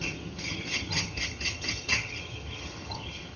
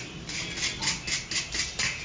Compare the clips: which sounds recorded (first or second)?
second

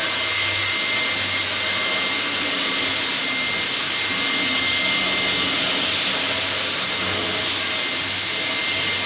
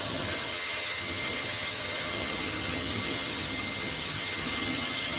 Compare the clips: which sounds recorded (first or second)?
first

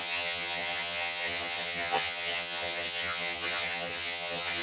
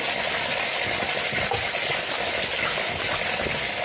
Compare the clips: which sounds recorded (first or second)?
second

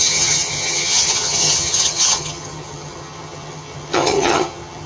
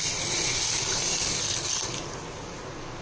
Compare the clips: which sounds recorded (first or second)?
second